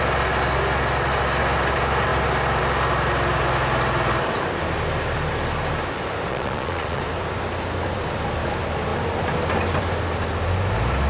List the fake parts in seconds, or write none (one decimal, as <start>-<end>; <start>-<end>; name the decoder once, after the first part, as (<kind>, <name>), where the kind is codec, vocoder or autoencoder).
6.3-7.0 (vocoder, Vocos)